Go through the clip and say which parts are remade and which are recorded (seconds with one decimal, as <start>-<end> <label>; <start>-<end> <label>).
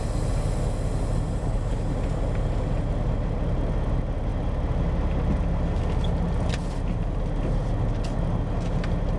0.0-1.4 recorded; 1.4-1.9 remade; 1.9-9.2 recorded